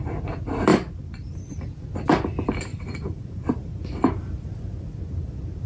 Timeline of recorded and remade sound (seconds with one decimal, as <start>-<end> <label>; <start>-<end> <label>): 0.0-0.7 recorded; 0.7-1.6 remade; 1.6-2.7 recorded; 2.7-5.7 remade